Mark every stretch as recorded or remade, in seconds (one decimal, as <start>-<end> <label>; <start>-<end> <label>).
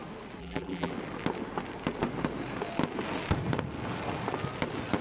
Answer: 0.0-0.4 recorded; 0.4-0.9 remade; 0.9-5.0 recorded